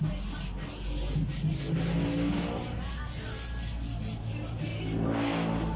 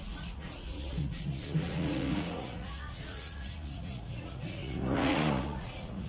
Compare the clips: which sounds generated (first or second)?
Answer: second